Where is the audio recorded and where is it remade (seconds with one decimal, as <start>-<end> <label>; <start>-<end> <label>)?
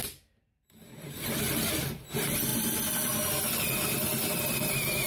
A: 0.0-5.1 recorded